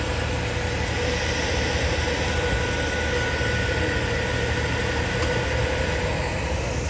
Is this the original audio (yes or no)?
yes